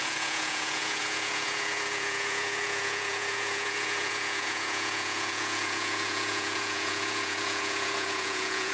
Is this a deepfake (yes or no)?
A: yes